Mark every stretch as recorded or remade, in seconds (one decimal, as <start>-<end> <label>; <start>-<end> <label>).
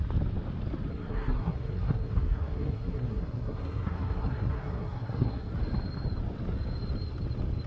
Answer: 0.0-0.9 recorded; 0.9-5.5 remade; 5.5-7.7 recorded